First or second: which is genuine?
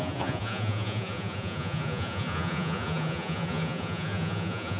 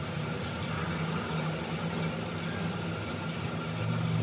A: second